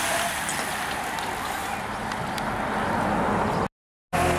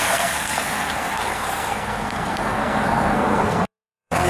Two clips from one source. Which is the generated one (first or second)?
second